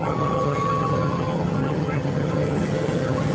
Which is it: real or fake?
fake